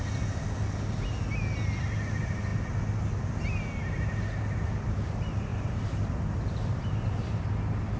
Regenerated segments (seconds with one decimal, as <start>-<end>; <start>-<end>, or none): 5.5-7.4